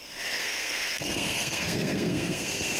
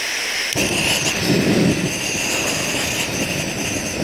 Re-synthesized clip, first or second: first